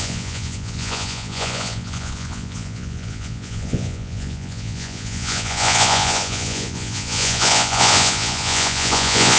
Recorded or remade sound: remade